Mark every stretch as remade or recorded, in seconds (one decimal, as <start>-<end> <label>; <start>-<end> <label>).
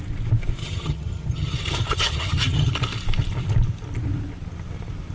0.0-0.6 recorded; 0.6-2.7 remade; 2.7-5.1 recorded